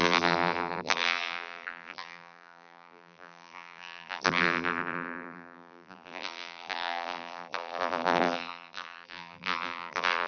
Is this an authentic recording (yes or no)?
no